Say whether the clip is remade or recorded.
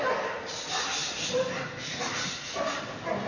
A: recorded